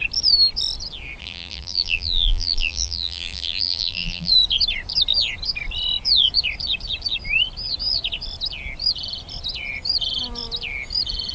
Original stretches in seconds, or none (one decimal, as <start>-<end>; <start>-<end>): 0.0-1.2; 4.3-11.3

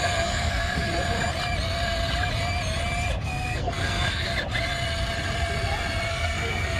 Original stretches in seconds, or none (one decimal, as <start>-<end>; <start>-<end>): 0.8-3.2; 4.3-6.1

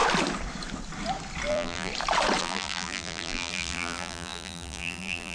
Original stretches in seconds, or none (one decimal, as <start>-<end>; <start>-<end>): 0.0-1.5; 1.9-2.4

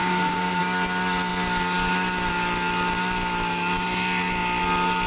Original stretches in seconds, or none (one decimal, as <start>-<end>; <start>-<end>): 0.6-5.1